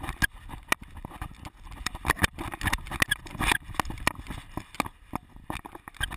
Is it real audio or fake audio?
real